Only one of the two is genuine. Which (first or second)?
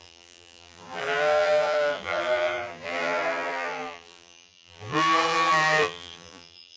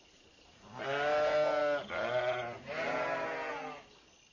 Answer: second